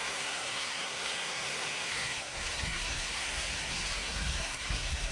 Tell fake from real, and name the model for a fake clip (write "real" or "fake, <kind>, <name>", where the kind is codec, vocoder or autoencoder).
fake, codec, SNAC